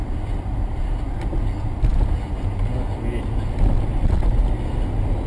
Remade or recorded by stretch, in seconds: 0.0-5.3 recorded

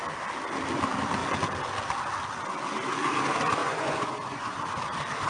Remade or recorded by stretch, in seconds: 0.0-3.6 recorded; 3.6-4.6 remade; 4.6-5.3 recorded

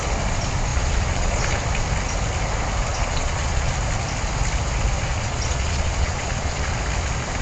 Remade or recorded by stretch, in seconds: 0.0-0.7 recorded; 0.7-1.4 remade; 1.4-2.9 recorded; 2.9-3.7 remade; 3.7-5.1 recorded; 5.1-6.7 remade; 6.7-7.4 recorded

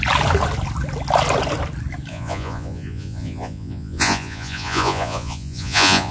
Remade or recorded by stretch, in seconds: 0.0-2.1 recorded; 2.1-6.1 remade

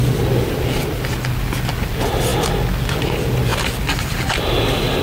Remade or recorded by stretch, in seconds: 0.0-5.0 recorded

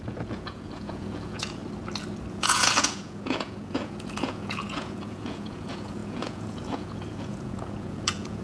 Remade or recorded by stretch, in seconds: 0.0-1.6 remade; 1.6-2.3 recorded; 2.3-8.4 remade